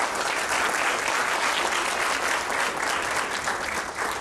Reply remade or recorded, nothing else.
recorded